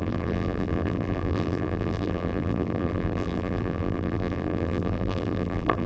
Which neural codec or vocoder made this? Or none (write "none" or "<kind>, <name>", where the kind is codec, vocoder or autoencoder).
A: vocoder, BigVGAN v2